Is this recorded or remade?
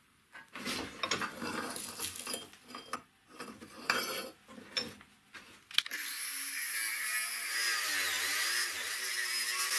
recorded